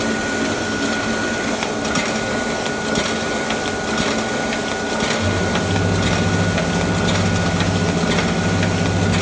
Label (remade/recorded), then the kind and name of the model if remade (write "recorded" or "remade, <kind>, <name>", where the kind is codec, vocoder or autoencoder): recorded